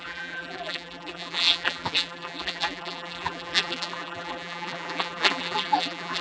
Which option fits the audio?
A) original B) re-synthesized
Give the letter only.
B